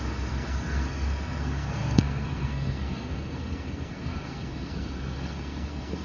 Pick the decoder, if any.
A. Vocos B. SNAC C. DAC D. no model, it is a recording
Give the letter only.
B